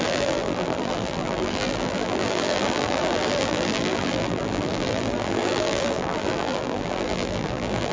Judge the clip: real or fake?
fake